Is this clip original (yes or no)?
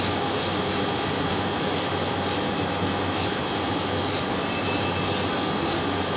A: yes